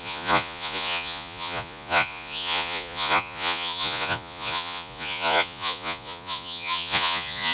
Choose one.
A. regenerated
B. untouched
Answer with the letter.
A